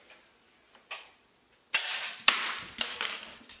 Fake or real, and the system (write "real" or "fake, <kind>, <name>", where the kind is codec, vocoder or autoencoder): real